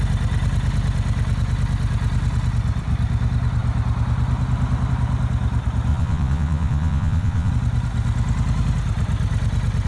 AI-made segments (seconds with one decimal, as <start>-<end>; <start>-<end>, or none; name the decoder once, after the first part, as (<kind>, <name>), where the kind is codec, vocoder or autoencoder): 5.9-7.5 (vocoder, Vocos)